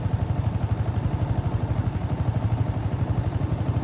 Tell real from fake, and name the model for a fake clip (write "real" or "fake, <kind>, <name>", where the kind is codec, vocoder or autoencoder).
real